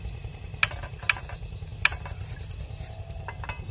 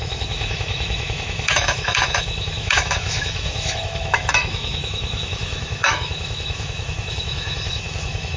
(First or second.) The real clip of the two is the first